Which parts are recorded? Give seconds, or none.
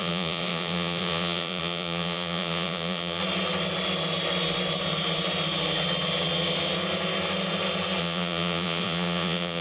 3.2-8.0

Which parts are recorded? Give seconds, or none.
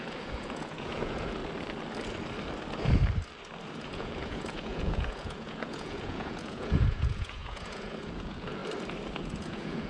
1.4-3.7; 8.6-9.2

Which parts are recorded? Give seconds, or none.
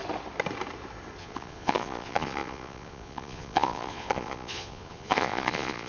0.0-1.2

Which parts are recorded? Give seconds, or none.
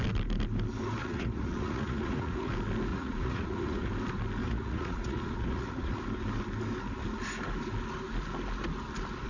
0.0-1.0; 2.5-2.9; 3.9-4.4; 6.0-9.3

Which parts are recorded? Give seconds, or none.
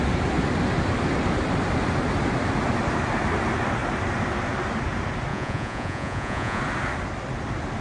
0.0-5.3; 6.6-7.8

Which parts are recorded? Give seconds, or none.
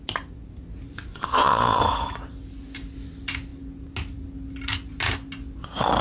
0.0-1.1; 1.8-6.0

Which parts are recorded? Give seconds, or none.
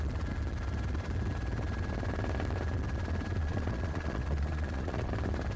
0.0-3.4; 5.1-5.6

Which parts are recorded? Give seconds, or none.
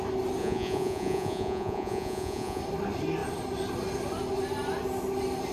0.0-0.4; 2.6-5.5